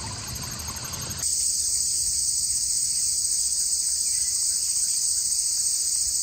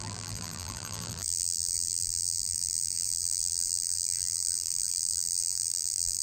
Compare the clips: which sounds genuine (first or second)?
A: first